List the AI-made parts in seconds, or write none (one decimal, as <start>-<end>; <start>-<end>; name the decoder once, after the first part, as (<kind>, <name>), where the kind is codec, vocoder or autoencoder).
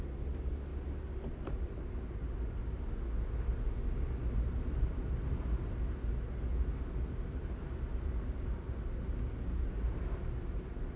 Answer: none